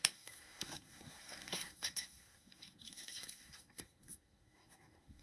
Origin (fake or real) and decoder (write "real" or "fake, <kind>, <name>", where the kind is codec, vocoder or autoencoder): fake, codec, SNAC